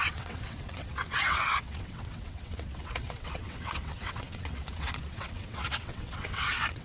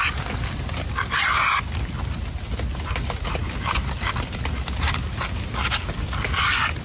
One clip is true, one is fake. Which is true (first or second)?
second